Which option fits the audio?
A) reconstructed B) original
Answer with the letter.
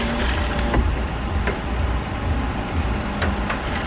B